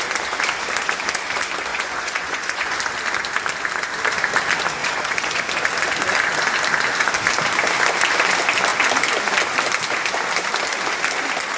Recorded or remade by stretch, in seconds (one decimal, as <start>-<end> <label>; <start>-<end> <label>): 0.0-1.7 recorded; 1.7-2.8 remade; 2.8-4.8 recorded; 4.8-5.4 remade; 5.4-11.6 recorded

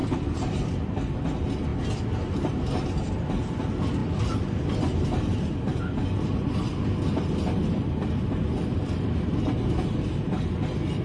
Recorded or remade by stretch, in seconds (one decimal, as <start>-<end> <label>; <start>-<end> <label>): 0.0-11.0 recorded

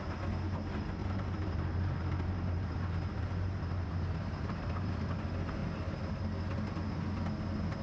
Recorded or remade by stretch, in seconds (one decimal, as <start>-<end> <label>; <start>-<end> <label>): 0.0-1.0 recorded; 1.0-5.1 remade; 5.1-5.6 recorded; 5.6-6.1 remade; 6.1-7.8 recorded

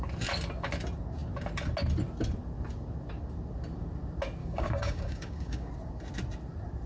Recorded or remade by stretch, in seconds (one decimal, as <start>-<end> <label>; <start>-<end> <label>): 0.0-4.4 recorded; 4.4-5.7 remade; 5.7-6.9 recorded

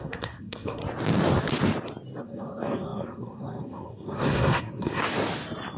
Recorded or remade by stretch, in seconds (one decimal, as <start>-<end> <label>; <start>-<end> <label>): 0.0-0.8 remade; 0.8-2.2 recorded; 2.2-5.0 remade; 5.0-5.8 recorded